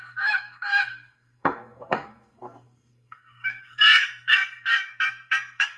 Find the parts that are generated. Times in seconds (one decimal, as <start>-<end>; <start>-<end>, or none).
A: 0.0-5.8